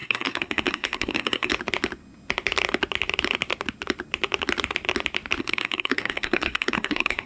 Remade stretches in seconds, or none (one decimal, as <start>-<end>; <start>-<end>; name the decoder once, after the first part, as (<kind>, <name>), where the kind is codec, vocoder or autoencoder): 0.0-1.5 (codec, SNAC); 5.4-7.3